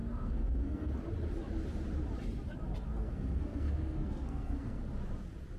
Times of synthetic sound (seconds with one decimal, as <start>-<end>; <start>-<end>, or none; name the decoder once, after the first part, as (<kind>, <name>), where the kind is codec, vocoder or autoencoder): 0.0-0.9 (codec, SNAC); 2.9-4.8

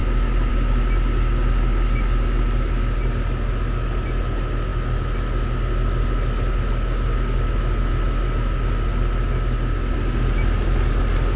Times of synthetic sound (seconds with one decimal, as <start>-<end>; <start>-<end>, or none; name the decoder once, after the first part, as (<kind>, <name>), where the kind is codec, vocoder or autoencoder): none

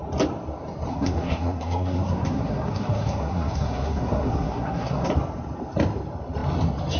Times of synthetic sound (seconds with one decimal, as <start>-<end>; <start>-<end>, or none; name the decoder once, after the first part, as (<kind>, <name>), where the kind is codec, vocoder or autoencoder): 0.9-5.1 (codec, SNAC)

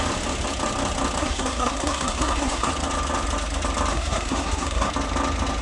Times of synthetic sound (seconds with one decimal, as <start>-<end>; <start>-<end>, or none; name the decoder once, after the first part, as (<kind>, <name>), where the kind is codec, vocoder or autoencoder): 1.2-2.7 (codec, SNAC); 3.9-4.9

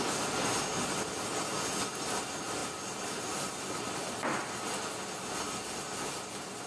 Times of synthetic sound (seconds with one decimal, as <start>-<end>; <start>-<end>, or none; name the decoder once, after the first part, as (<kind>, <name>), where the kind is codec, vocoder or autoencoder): none

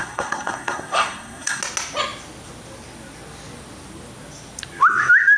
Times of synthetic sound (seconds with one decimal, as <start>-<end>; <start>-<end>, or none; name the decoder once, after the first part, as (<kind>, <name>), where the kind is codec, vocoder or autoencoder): 0.0-1.6 (codec, SNAC)

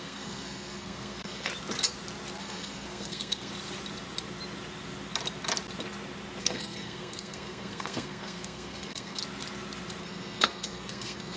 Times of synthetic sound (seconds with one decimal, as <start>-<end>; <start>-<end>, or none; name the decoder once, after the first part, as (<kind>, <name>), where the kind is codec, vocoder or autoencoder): 0.0-1.5 (codec, SNAC); 2.4-3.5; 6.4-9.2; 10.0-11.4